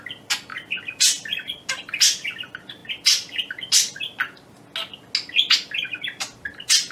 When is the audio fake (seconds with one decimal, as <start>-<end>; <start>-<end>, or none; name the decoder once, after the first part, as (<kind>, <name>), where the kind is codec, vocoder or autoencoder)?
none